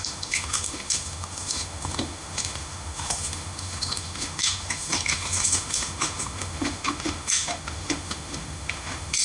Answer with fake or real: fake